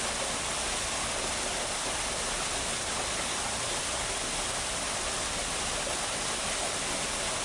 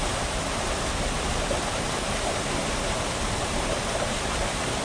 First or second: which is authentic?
first